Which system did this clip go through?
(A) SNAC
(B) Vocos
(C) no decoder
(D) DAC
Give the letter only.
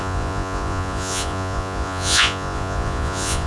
B